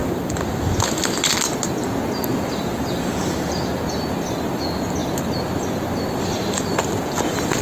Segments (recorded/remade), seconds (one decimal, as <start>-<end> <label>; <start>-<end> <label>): 0.0-2.3 recorded; 2.3-3.8 remade; 3.8-7.6 recorded